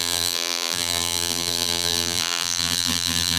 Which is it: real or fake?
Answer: fake